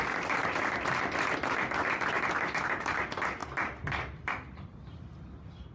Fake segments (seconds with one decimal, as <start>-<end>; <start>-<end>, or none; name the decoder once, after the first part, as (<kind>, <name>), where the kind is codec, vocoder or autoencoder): 3.4-5.0 (vocoder, BigVGAN v2)